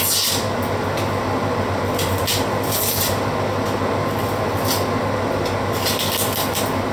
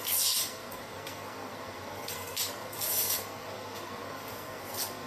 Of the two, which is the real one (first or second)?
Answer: first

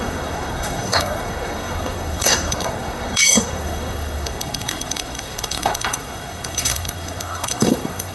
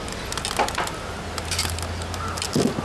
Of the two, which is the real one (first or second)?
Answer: second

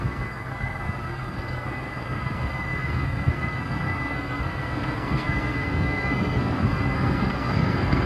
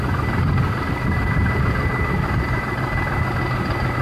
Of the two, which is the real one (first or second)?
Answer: second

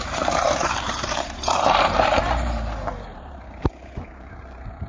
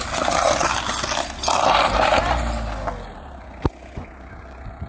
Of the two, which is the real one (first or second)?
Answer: second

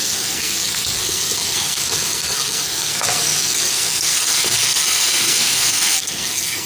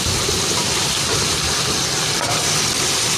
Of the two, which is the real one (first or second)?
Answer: second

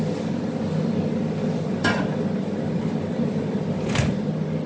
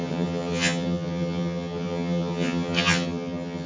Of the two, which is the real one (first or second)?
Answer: first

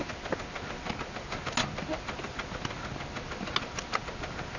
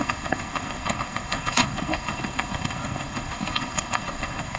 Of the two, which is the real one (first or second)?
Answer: first